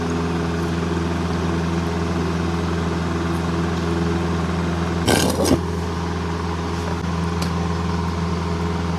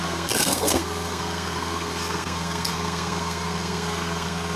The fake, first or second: second